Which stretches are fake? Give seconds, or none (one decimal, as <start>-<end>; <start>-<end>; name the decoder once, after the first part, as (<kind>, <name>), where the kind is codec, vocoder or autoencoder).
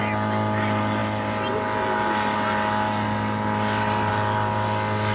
none